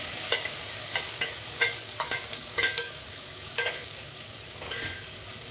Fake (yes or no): yes